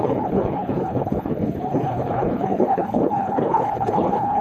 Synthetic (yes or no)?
yes